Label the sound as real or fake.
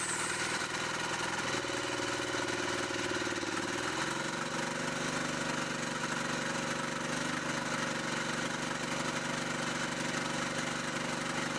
real